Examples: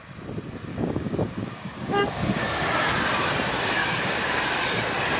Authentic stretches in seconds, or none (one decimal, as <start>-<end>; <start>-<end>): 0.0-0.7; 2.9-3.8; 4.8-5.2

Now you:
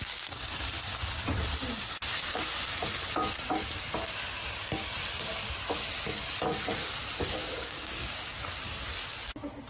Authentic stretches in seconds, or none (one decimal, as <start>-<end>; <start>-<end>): 0.0-7.4; 8.2-9.7

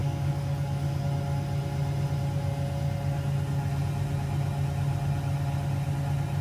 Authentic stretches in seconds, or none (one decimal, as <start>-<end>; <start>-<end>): 1.0-6.4

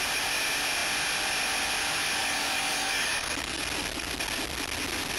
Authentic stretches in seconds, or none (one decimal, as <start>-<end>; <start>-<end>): 0.0-2.2; 3.6-5.2

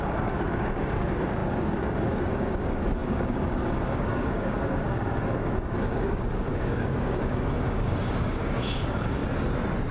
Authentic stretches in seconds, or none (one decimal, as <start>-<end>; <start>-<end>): 9.2-9.9

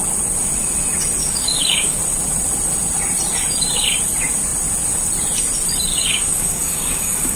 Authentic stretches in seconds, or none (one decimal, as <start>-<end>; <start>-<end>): 0.0-1.2; 2.0-5.9

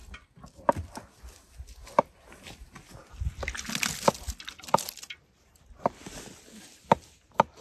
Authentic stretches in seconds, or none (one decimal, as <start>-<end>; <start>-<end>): 0.0-7.6

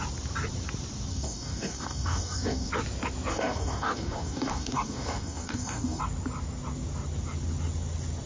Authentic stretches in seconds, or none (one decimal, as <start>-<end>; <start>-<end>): 0.0-1.1; 2.7-3.3; 6.0-8.3